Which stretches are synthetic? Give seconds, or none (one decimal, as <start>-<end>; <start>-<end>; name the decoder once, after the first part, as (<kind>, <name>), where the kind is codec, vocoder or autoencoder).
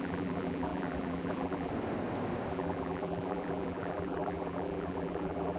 0.0-1.7 (vocoder, BigVGAN v2); 2.5-5.6